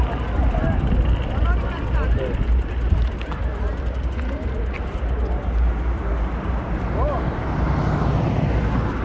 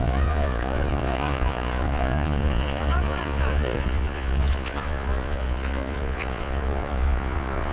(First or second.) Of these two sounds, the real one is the first